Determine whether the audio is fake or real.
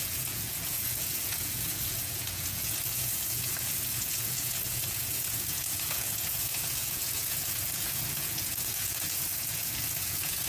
fake